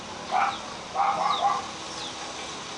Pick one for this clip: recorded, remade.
recorded